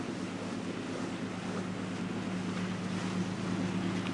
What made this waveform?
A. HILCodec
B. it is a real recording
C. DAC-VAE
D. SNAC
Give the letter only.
B